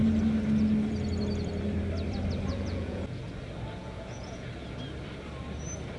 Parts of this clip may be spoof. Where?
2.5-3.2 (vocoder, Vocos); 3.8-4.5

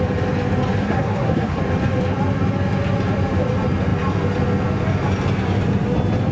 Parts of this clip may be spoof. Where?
0.8-1.6 (codec, SNAC)